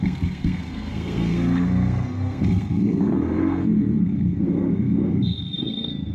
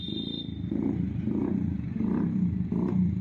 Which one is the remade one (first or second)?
first